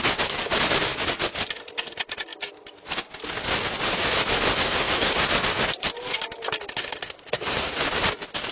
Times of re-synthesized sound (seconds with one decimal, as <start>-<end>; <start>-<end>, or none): 4.5-5.3; 7.0-7.8

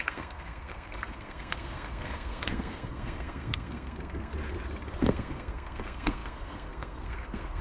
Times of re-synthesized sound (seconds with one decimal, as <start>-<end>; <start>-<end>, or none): 0.0-4.3; 5.0-7.6

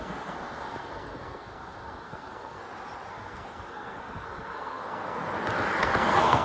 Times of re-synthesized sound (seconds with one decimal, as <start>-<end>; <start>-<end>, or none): 0.0-2.6; 3.1-5.2; 5.8-6.4

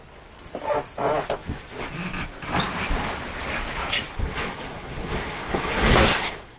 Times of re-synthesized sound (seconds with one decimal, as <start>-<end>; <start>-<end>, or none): 4.2-6.6